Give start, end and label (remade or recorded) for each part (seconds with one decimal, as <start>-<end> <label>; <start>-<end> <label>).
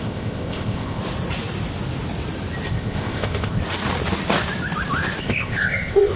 0.0-1.0 remade; 1.0-2.7 recorded; 2.7-3.6 remade; 3.6-5.2 recorded; 5.2-6.2 remade